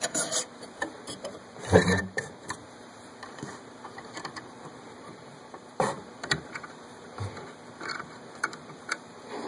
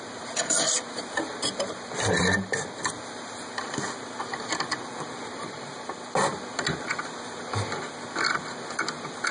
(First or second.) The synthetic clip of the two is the first